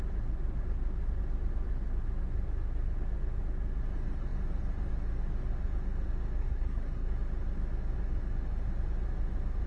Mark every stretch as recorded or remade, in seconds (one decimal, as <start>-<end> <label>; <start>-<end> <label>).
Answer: 0.0-6.4 recorded; 6.4-7.1 remade; 7.1-9.7 recorded